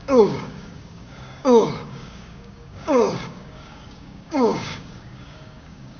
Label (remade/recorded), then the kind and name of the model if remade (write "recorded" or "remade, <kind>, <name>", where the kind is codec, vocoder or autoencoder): remade, codec, DAC